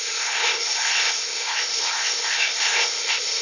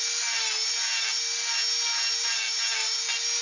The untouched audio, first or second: second